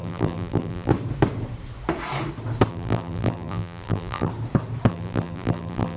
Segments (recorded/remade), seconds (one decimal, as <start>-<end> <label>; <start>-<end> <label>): 0.0-0.9 remade; 0.9-2.7 recorded; 2.7-4.3 remade; 4.3-4.9 recorded; 4.9-6.0 remade